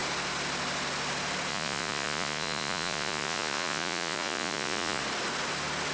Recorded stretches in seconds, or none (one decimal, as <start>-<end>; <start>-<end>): 0.0-1.5; 5.0-5.9